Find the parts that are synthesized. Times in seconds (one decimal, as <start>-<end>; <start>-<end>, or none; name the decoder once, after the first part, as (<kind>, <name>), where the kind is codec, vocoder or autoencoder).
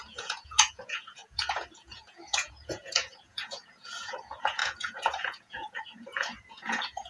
0.0-7.1 (vocoder, Vocos)